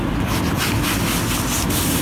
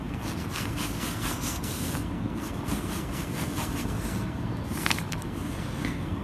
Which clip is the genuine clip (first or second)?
first